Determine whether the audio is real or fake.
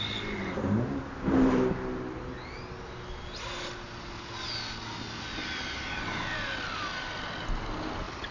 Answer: real